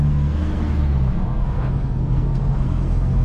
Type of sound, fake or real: fake